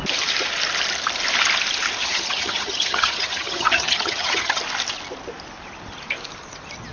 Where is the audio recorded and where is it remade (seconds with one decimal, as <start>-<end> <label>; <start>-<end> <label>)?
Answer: 0.0-2.0 recorded; 2.0-4.6 remade; 4.6-6.9 recorded